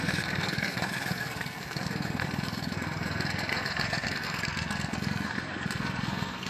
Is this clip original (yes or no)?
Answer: no